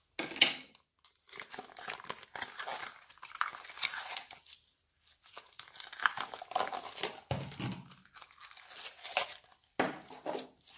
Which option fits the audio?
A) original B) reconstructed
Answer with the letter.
A